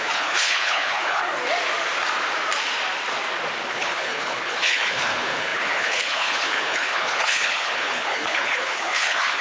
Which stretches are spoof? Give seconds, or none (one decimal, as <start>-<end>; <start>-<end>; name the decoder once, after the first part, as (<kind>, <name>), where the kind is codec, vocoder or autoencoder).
0.0-1.2 (codec, HILCodec); 3.7-9.4